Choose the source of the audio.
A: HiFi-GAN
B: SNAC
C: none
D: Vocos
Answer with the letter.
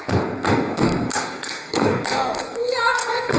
B